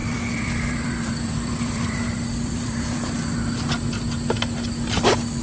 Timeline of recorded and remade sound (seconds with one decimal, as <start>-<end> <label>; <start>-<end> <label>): 0.0-3.2 remade; 3.2-5.4 recorded